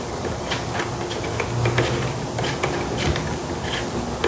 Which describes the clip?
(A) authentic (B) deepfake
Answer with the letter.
A